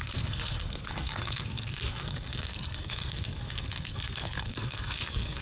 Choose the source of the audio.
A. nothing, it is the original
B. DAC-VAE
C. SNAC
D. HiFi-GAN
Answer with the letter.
C